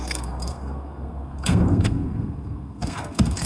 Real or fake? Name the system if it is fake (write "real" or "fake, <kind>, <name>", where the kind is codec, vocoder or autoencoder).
fake, codec, SNAC